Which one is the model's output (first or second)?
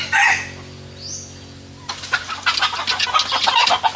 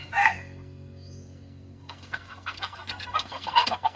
second